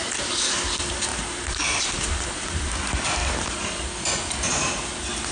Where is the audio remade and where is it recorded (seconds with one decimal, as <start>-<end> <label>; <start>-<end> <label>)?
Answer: 0.0-5.3 recorded